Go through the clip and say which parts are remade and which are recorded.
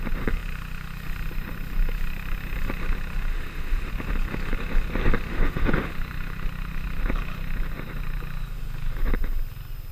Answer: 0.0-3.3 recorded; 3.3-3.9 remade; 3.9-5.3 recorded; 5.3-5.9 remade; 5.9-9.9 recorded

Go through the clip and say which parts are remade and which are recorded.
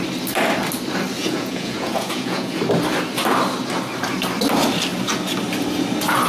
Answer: 0.0-1.2 recorded; 1.2-2.6 remade; 2.6-6.3 recorded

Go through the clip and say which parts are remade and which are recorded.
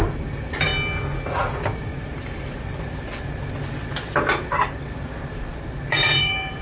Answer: 0.0-0.7 remade; 0.7-1.3 recorded; 1.3-1.9 remade; 1.9-5.9 recorded; 5.9-6.6 remade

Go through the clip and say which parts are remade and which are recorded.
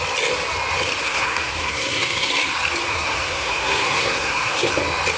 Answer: 0.0-1.0 recorded; 1.0-2.3 remade; 2.3-2.9 recorded; 2.9-4.7 remade; 4.7-5.2 recorded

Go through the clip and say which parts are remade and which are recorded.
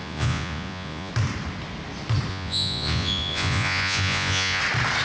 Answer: 0.0-1.1 remade; 1.1-2.3 recorded; 2.3-4.6 remade; 4.6-5.0 recorded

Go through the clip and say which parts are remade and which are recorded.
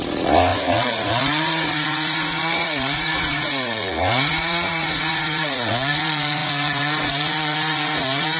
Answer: 0.0-8.4 remade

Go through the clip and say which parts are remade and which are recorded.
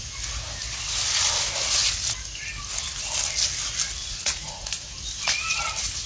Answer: 0.0-4.0 recorded; 4.0-4.7 remade; 4.7-6.1 recorded